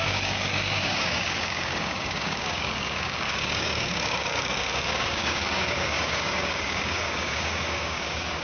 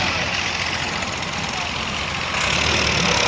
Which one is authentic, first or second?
second